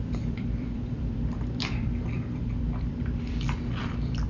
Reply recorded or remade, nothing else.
remade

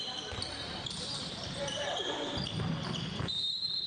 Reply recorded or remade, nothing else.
remade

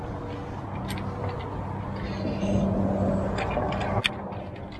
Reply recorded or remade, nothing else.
recorded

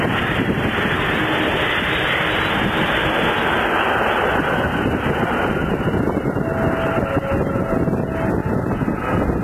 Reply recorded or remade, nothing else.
recorded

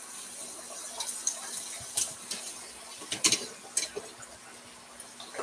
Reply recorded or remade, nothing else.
recorded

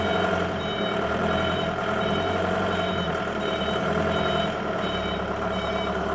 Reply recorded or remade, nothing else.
remade